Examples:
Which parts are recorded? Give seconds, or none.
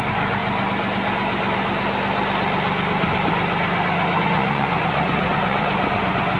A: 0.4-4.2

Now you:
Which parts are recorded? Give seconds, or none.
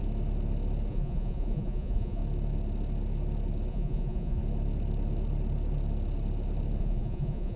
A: 0.0-0.9; 2.2-3.7; 4.4-6.8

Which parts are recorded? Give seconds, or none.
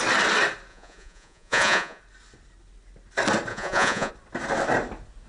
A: 0.0-0.7; 2.0-3.5; 4.1-5.3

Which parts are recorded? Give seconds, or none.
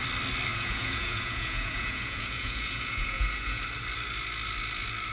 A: 0.0-0.5; 3.6-5.1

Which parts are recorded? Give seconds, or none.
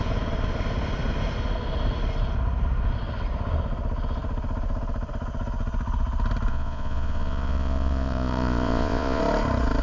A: 0.0-6.5; 9.2-9.8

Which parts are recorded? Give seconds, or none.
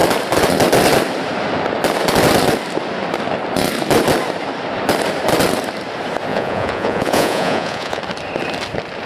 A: 0.0-6.3; 8.0-9.1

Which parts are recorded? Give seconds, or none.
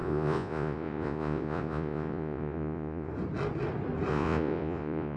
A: 3.1-4.1